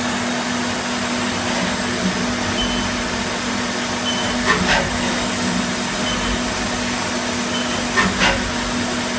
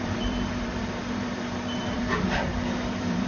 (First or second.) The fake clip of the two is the second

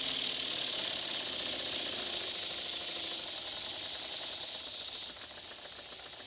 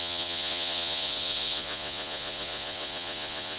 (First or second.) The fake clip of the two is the second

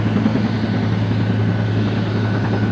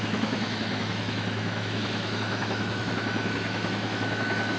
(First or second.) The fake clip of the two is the second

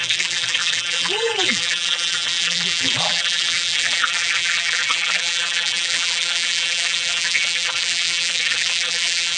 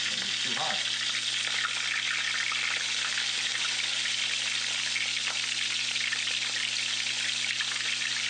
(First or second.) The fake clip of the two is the first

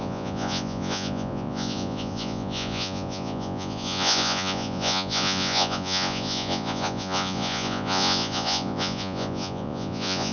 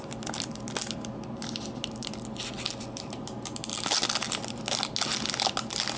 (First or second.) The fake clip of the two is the first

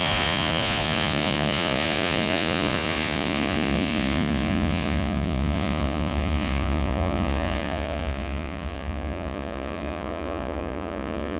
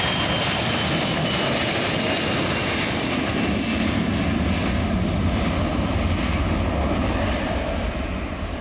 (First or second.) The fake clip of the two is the first